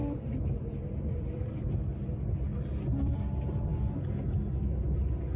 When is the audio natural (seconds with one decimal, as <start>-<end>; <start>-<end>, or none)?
2.1-2.5; 3.1-5.4

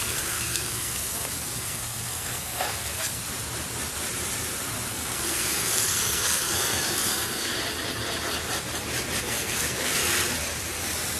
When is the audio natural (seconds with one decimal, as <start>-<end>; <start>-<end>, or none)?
3.2-4.9; 7.5-9.2; 10.0-11.2